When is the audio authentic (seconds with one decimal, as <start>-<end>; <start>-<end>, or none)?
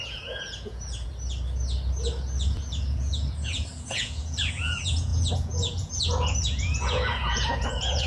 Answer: 1.1-2.5